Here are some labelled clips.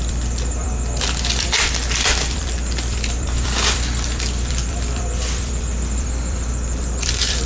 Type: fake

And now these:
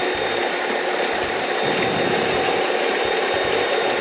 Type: fake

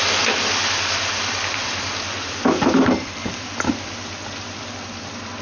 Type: fake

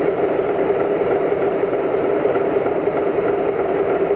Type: fake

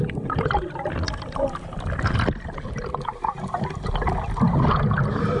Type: real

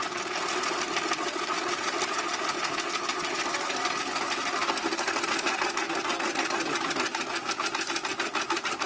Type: real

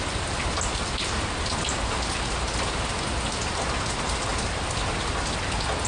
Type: real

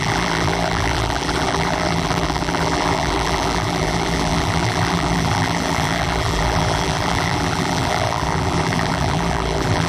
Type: fake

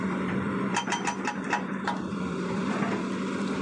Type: fake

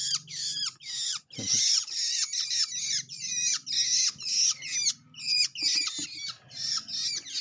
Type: real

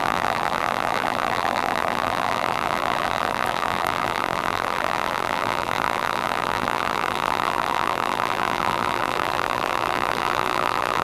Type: fake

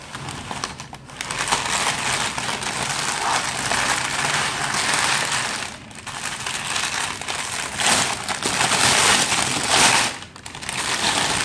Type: real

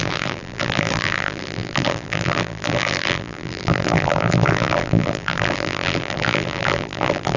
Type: fake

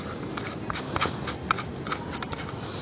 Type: real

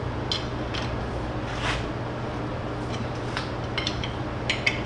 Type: real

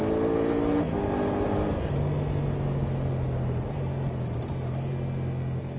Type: real